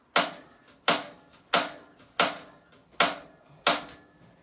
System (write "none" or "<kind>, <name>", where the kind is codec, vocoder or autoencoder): none